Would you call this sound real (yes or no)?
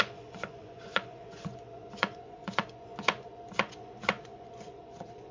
no